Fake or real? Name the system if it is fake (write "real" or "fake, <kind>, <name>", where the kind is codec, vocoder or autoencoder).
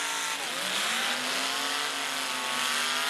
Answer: real